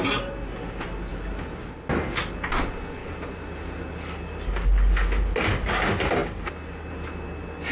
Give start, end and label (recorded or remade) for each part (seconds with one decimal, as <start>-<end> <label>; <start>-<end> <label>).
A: 0.0-7.7 recorded